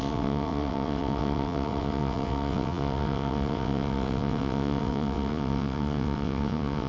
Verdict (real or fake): fake